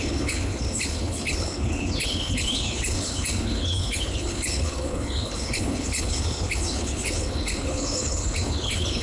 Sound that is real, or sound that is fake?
fake